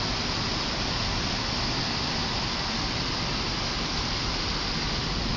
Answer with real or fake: real